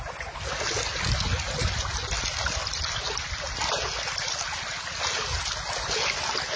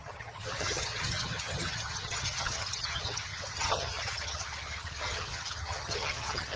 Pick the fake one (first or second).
second